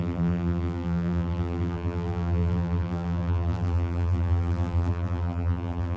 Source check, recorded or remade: remade